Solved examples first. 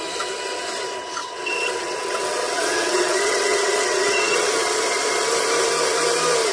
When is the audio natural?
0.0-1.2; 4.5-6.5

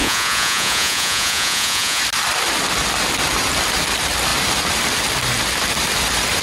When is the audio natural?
2.0-6.4

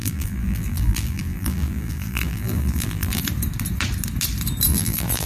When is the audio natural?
3.2-4.7

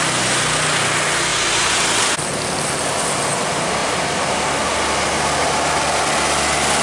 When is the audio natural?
0.0-1.3; 2.0-3.8; 4.8-6.8

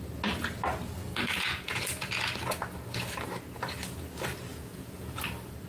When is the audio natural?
0.0-1.1; 2.1-4.5; 5.2-5.7

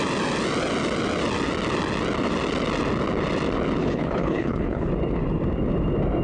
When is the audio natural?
0.0-3.8; 4.9-6.2